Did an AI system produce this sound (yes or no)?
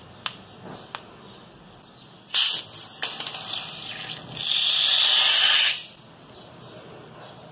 no